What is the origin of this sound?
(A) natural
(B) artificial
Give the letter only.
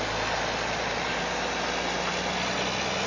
A